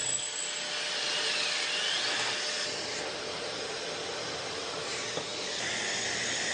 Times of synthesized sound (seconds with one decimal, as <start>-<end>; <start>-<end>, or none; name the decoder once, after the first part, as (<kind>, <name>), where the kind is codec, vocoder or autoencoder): none